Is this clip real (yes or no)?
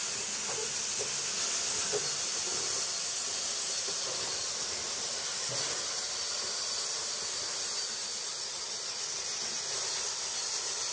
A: yes